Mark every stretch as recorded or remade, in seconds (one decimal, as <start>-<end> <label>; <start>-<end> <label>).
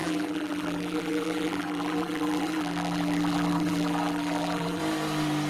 0.0-4.8 remade; 4.8-5.5 recorded